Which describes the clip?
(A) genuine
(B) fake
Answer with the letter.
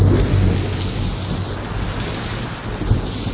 A